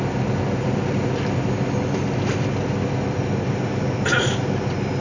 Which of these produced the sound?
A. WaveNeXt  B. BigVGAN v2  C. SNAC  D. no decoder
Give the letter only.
D